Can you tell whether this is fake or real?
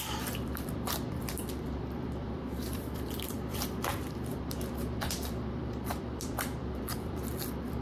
fake